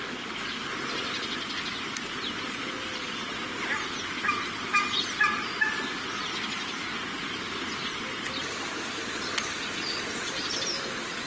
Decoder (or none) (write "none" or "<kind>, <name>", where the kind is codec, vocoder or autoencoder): none